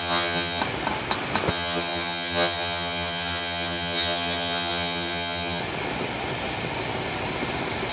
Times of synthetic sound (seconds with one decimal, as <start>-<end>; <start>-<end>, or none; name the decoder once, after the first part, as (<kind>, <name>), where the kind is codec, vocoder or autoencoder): 0.0-0.6 (vocoder, HiFi-GAN); 1.5-5.6